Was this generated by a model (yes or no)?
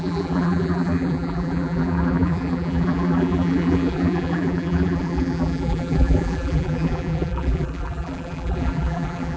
yes